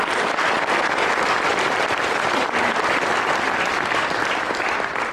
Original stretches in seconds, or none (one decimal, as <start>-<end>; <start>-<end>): 0.0-1.5; 4.6-5.1